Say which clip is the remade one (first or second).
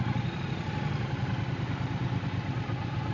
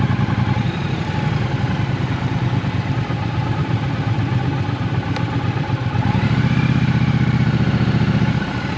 second